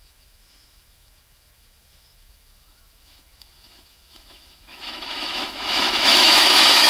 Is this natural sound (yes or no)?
no